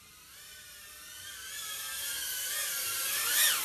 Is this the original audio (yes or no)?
yes